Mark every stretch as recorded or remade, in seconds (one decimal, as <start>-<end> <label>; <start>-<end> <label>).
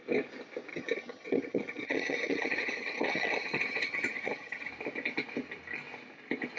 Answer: 0.0-0.7 recorded; 0.7-4.7 remade; 4.7-6.6 recorded